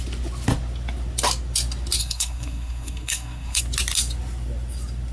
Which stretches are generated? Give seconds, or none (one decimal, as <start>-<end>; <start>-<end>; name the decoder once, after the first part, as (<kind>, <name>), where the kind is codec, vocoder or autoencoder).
2.0-3.6 (codec, SNAC)